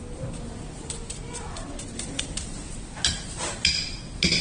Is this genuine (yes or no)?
yes